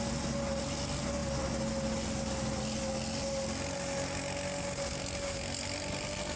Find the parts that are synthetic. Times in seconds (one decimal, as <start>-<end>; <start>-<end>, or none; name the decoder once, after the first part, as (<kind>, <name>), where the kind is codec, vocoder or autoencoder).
none